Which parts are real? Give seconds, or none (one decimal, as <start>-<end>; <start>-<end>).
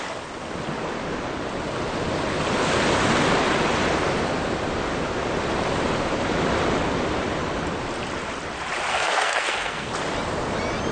0.0-8.9; 9.9-10.9